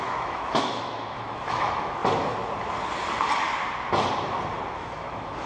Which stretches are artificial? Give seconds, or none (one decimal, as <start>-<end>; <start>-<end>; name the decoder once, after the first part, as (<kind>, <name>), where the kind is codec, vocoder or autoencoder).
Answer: 0.0-2.0 (autoencoder, DAC-VAE); 4.7-5.5